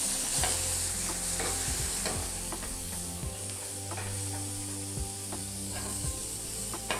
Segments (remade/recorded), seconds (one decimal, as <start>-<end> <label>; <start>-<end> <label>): 0.0-2.2 recorded; 2.2-3.7 remade; 3.7-5.4 recorded; 5.4-6.2 remade; 6.2-7.0 recorded